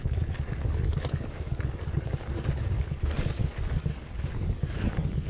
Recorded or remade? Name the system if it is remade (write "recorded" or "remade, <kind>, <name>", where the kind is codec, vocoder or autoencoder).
remade, codec, DAC